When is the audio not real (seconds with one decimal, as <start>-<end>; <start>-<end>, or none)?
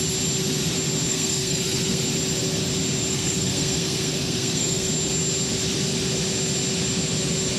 1.1-2.0; 3.1-4.9